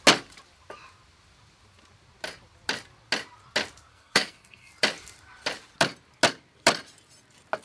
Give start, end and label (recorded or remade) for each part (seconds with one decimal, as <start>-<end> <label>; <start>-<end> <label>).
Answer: 0.0-3.9 recorded; 3.9-4.7 remade; 4.7-7.6 recorded

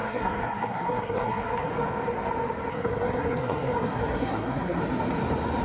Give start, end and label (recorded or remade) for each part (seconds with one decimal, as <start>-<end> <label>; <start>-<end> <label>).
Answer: 0.0-1.7 remade; 1.7-2.7 recorded; 2.7-4.8 remade; 4.8-5.6 recorded

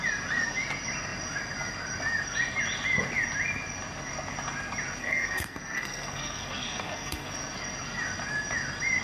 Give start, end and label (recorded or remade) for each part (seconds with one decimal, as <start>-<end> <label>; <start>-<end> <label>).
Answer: 0.0-5.0 recorded; 5.0-7.3 remade; 7.3-9.0 recorded

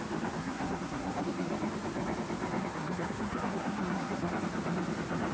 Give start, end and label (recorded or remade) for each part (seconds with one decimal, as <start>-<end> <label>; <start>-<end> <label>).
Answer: 0.0-0.4 recorded; 0.4-1.5 remade; 1.5-2.6 recorded; 2.6-4.3 remade; 4.3-5.3 recorded

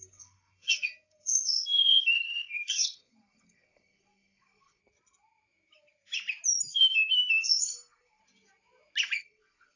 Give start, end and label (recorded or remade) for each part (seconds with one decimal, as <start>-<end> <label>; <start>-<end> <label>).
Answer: 0.0-4.8 remade; 4.8-6.7 recorded; 6.7-8.2 remade; 8.2-9.2 recorded; 9.2-9.8 remade

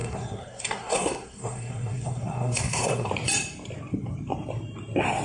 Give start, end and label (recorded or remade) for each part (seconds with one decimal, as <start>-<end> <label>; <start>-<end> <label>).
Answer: 0.0-3.1 remade; 3.1-5.2 recorded

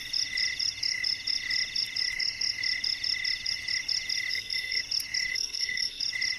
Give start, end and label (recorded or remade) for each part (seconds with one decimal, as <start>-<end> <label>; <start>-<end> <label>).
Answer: 0.0-4.3 recorded; 4.3-4.8 remade; 4.8-5.3 recorded; 5.3-6.0 remade; 6.0-6.4 recorded

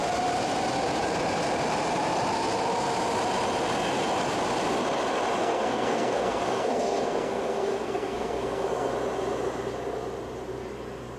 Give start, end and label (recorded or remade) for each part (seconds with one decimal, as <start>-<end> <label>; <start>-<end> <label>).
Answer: 0.0-5.4 recorded; 5.4-8.9 remade; 8.9-11.2 recorded